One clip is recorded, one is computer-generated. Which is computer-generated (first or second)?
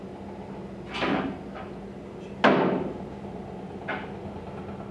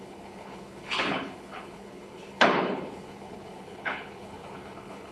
second